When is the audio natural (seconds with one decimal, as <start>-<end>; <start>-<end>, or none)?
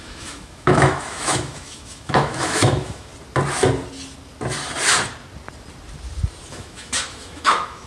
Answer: 3.1-6.5